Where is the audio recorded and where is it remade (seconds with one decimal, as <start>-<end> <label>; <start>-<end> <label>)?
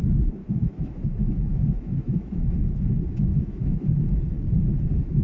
0.0-0.4 recorded; 0.4-2.5 remade; 2.5-3.3 recorded; 3.3-3.9 remade; 3.9-5.2 recorded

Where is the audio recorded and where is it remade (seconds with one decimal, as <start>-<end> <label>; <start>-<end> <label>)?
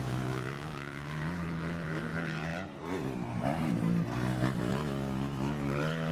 0.0-2.5 remade; 2.5-4.7 recorded; 4.7-6.1 remade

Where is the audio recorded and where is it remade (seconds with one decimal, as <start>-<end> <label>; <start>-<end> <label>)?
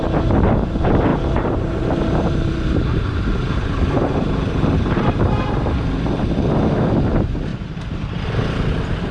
0.0-1.1 recorded; 1.1-5.6 remade; 5.6-7.5 recorded; 7.5-8.2 remade; 8.2-9.1 recorded